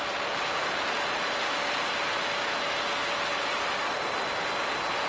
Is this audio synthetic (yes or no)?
no